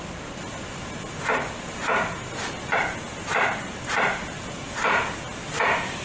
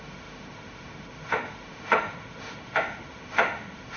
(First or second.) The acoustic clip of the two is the first